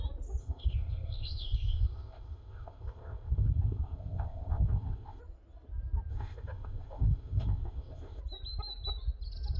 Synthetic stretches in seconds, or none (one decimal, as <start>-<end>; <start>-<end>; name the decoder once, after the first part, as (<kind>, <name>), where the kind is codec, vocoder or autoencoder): 0.4-5.2 (codec, ZipCodec); 6.1-8.2